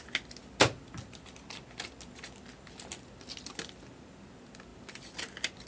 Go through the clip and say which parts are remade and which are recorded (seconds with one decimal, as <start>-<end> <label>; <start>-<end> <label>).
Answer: 0.0-5.7 recorded